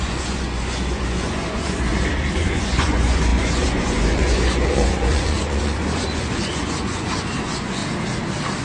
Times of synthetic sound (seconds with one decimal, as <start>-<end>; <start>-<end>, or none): 0.0-1.9; 2.4-7.8